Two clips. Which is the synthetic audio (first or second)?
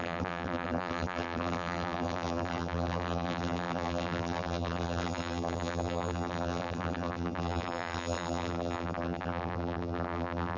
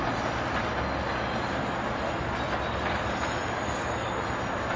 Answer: first